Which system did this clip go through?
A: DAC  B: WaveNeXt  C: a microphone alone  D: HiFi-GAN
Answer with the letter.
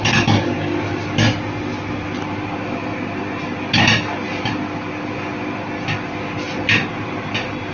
C